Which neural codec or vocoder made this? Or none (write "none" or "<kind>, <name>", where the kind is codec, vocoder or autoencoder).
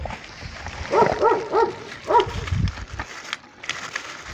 none